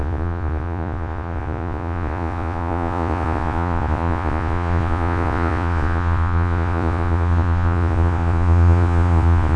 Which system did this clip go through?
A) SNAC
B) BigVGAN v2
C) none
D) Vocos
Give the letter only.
D